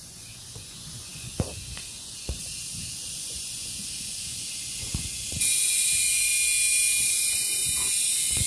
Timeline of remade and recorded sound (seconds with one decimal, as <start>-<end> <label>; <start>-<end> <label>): 0.0-6.3 remade; 6.3-7.0 recorded; 7.0-8.5 remade